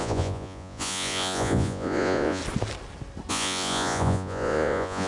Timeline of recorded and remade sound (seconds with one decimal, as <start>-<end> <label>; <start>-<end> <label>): 0.0-2.4 remade; 2.4-3.3 recorded; 3.3-5.1 remade